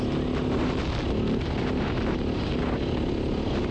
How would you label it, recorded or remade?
recorded